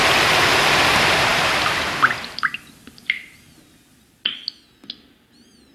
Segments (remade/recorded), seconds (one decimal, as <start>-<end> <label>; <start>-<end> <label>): 0.0-5.7 recorded